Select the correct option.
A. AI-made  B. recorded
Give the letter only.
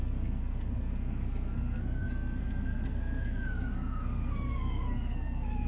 A